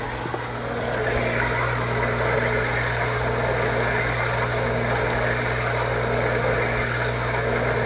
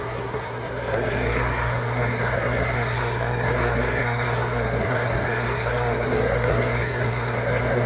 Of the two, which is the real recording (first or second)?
first